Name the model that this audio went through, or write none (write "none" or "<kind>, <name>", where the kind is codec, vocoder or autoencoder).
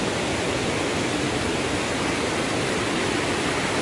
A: none